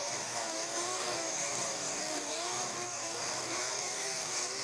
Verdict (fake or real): fake